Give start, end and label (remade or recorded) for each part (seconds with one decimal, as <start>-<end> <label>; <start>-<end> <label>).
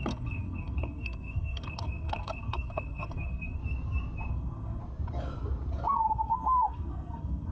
0.0-3.6 remade; 3.6-4.3 recorded; 4.3-4.8 remade; 4.8-5.9 recorded; 5.9-7.5 remade